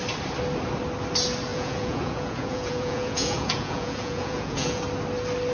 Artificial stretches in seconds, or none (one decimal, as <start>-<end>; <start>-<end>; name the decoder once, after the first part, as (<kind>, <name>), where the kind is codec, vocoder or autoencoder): 1.5-4.8 (vocoder, Vocos)